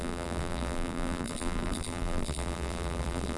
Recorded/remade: remade